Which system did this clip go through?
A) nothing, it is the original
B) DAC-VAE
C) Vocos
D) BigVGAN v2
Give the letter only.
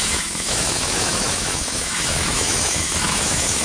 B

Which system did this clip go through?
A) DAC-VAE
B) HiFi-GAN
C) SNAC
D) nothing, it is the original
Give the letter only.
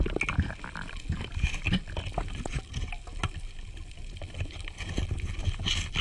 D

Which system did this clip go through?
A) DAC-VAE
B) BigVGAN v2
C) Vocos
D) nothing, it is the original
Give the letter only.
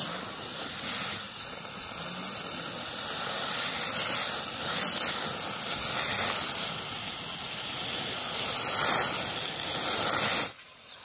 D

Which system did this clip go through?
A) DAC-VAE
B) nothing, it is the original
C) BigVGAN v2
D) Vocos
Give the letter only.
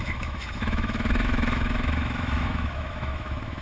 A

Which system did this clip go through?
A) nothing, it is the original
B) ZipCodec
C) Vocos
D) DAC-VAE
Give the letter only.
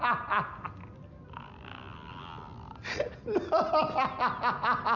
A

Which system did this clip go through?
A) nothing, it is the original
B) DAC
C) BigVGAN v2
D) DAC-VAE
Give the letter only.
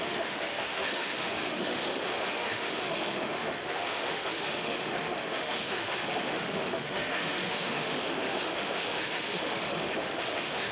D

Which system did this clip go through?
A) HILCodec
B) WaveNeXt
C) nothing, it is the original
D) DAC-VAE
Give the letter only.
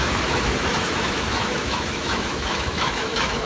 D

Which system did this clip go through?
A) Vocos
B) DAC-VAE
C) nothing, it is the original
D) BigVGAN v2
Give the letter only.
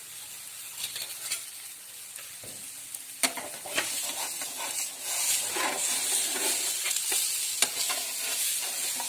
C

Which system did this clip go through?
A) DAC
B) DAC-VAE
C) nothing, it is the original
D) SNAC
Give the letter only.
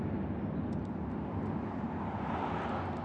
C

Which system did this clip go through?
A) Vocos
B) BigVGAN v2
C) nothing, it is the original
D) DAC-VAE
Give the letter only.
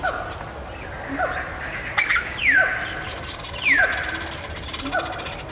C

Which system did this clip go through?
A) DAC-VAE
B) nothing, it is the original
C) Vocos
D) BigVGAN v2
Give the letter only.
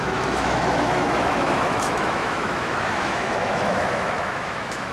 A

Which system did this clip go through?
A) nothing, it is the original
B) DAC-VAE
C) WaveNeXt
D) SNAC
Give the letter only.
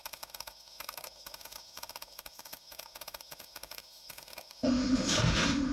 B